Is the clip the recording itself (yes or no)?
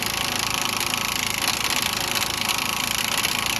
yes